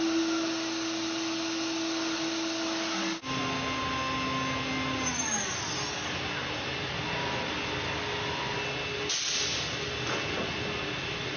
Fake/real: real